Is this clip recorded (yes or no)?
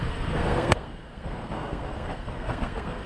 no